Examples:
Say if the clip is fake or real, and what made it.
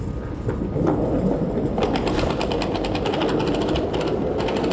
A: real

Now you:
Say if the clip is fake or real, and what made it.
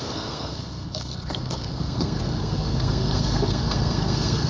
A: fake, codec, SNAC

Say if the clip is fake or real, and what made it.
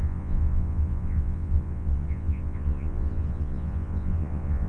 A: fake, vocoder, Vocos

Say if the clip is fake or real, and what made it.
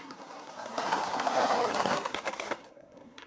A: fake, codec, SNAC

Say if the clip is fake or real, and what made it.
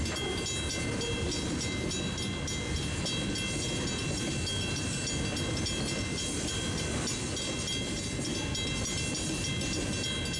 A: real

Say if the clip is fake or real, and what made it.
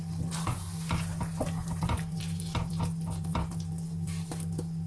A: real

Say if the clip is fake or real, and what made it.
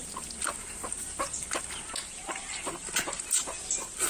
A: real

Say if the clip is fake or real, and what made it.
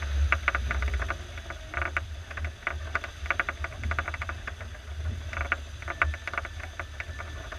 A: real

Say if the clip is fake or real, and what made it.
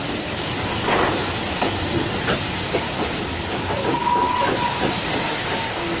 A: real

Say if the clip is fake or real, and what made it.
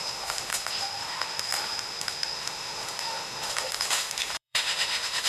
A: fake, autoencoder, DAC-VAE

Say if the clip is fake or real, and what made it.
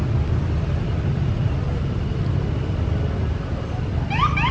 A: real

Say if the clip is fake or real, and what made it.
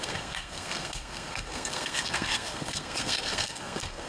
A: fake, codec, SNAC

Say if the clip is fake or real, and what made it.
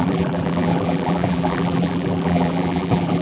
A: fake, vocoder, BigVGAN v2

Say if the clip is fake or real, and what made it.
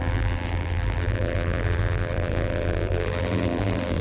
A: fake, vocoder, BigVGAN v2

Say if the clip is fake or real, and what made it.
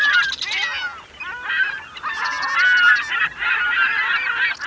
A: real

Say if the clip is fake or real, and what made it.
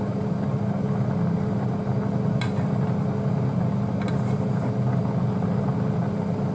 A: real